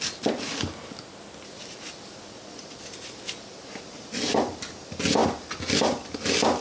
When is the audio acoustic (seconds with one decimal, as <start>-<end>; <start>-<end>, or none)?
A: 0.0-6.6